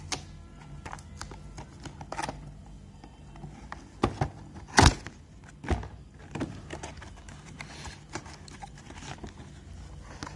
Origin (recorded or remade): recorded